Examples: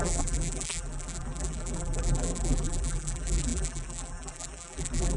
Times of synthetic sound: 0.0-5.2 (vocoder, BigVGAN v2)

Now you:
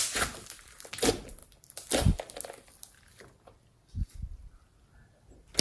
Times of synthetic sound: none